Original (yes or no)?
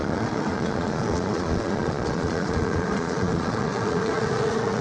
no